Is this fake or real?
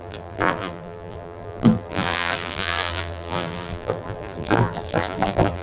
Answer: fake